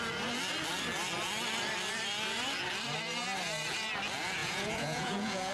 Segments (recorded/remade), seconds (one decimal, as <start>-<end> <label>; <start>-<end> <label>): 0.0-4.4 recorded; 4.4-5.5 remade